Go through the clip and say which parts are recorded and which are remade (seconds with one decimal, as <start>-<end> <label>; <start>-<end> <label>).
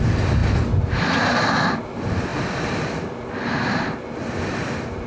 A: 0.0-5.1 recorded